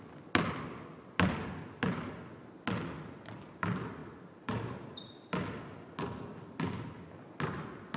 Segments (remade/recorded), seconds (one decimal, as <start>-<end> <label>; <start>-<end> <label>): 0.0-4.0 recorded; 4.0-5.1 remade; 5.1-8.0 recorded